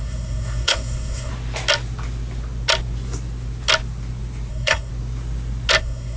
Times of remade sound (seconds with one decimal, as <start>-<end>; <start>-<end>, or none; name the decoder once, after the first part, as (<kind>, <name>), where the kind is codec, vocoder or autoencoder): 0.0-1.3 (codec, SNAC); 4.5-4.9; 5.8-6.2